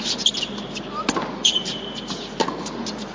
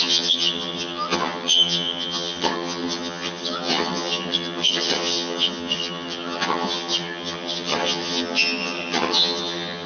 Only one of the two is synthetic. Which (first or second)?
second